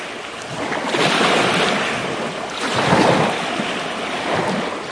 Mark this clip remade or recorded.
recorded